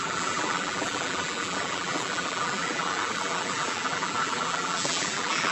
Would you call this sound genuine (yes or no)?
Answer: no